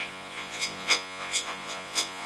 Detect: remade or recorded remade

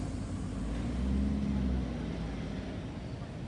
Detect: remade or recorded recorded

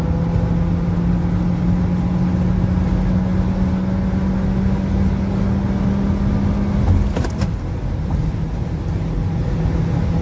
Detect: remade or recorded recorded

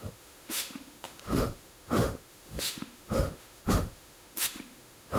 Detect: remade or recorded remade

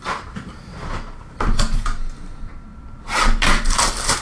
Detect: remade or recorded recorded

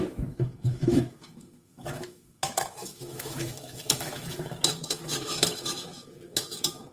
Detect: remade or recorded remade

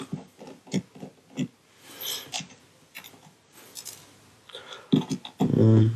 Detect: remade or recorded recorded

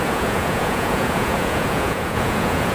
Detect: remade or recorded remade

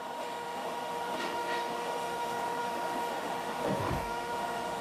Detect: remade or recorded remade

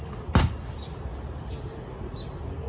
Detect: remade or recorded recorded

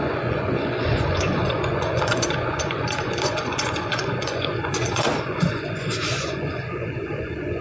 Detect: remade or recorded remade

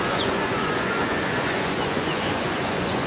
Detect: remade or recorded remade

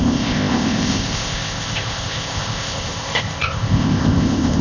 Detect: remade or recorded remade